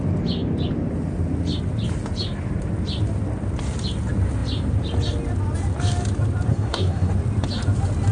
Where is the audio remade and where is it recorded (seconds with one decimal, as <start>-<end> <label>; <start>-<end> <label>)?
0.0-6.5 recorded; 6.5-7.1 remade; 7.1-8.1 recorded